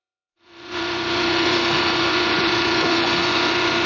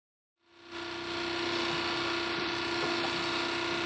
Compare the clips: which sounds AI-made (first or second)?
first